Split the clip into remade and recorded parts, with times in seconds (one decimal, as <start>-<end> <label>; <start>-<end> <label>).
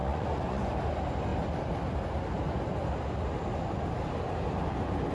0.0-0.7 remade; 0.7-5.1 recorded